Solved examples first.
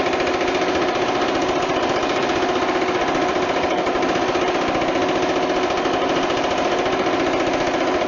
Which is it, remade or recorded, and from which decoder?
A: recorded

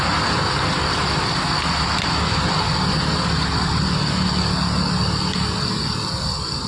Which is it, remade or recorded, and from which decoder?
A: recorded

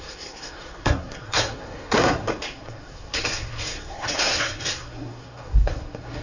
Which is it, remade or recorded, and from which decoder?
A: remade, codec, SNAC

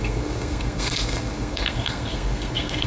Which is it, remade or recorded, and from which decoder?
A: remade, codec, SNAC